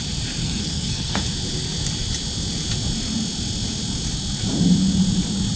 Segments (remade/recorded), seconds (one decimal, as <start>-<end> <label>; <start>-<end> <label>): 0.0-0.4 recorded; 0.4-1.2 remade; 1.2-5.6 recorded

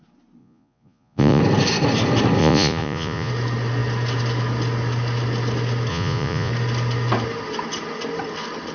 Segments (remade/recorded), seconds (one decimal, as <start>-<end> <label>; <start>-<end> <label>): 0.0-0.4 recorded; 0.4-1.4 remade; 1.4-2.4 recorded; 2.4-3.3 remade; 3.3-5.9 recorded; 5.9-6.5 remade; 6.5-8.7 recorded